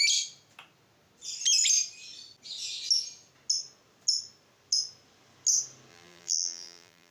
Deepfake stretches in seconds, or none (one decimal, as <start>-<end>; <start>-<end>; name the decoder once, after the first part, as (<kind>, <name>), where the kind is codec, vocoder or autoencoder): 5.9-7.1 (vocoder, BigVGAN v2)